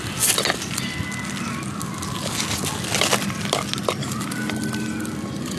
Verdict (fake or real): real